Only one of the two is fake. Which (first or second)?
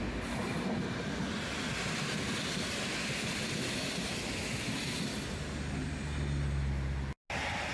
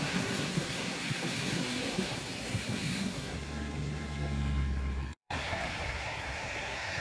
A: second